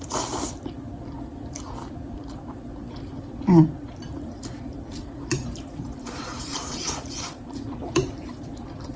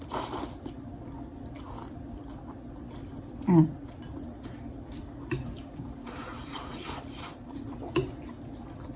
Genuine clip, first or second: second